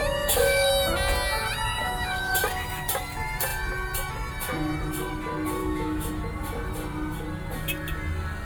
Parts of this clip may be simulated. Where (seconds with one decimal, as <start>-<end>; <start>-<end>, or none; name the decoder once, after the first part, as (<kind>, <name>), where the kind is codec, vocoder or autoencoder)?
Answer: 0.0-0.7 (autoencoder, DAC-VAE); 1.8-2.4; 5.6-6.1